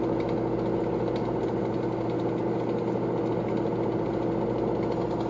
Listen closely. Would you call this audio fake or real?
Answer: real